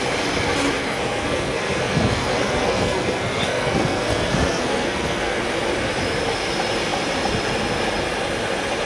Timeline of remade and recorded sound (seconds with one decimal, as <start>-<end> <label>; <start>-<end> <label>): 0.0-0.8 recorded; 0.8-5.4 remade; 5.4-8.9 recorded

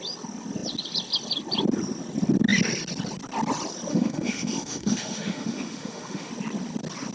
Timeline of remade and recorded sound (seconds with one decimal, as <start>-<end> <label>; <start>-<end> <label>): 0.0-3.9 recorded; 3.9-6.3 remade; 6.3-7.1 recorded

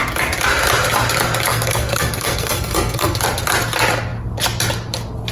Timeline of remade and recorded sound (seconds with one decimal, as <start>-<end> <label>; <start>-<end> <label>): 0.0-1.5 recorded; 1.5-3.2 remade; 3.2-5.3 recorded

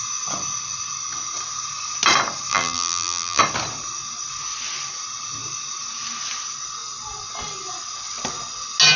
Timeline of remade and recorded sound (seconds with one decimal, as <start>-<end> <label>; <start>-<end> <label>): 0.0-2.5 recorded; 2.5-3.4 remade; 3.4-9.0 recorded

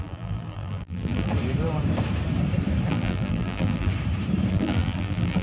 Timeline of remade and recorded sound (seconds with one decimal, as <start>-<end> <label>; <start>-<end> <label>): 0.0-1.3 remade; 1.3-2.9 recorded; 2.9-3.9 remade; 3.9-4.5 recorded; 4.5-5.4 remade